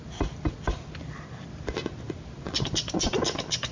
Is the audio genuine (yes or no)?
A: no